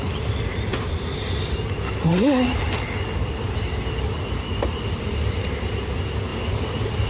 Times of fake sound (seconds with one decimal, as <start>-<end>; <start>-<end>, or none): none